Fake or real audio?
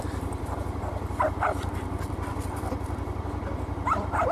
fake